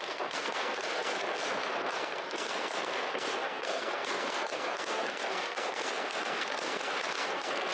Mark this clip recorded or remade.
remade